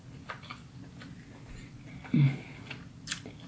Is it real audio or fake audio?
real